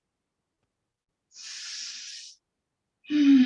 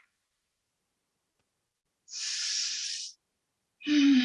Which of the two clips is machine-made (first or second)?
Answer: second